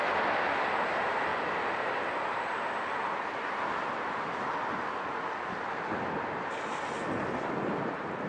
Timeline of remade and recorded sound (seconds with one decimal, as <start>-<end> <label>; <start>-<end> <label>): 0.0-1.3 recorded; 1.3-2.4 remade; 2.4-8.3 recorded